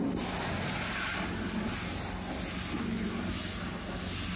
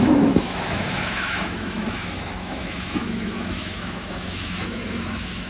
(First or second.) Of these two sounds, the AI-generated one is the second